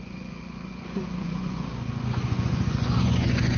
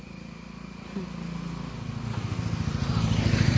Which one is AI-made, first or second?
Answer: first